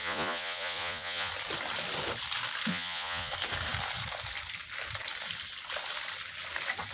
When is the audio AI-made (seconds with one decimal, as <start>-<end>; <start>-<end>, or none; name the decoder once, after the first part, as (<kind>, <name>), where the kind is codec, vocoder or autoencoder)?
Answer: 0.0-1.3 (vocoder, Vocos); 2.7-3.3

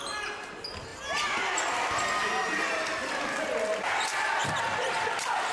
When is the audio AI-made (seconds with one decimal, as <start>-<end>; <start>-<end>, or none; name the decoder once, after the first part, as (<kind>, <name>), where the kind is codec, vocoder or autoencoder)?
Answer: none